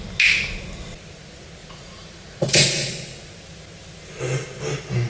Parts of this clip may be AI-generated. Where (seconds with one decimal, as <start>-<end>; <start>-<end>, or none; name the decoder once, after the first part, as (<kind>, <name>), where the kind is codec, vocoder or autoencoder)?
1.6-2.9 (vocoder, Vocos)